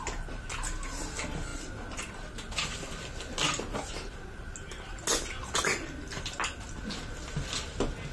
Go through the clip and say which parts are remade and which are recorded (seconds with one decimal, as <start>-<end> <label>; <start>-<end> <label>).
0.0-8.1 recorded